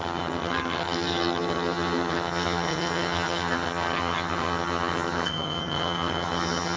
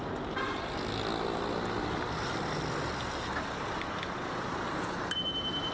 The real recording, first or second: second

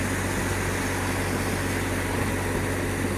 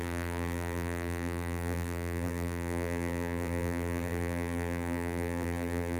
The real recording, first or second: first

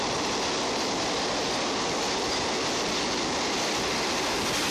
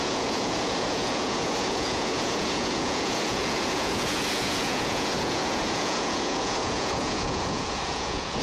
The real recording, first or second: first